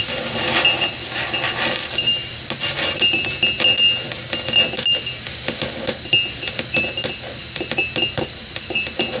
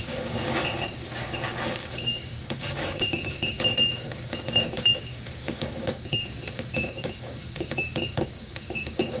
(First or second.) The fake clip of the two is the second